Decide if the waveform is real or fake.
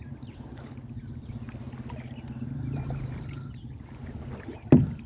real